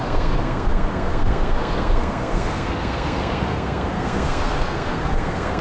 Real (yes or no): no